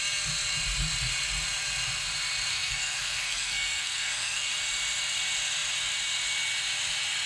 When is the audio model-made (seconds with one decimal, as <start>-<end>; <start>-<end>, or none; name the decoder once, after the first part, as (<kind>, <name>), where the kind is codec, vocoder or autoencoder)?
2.5-4.5 (codec, SNAC)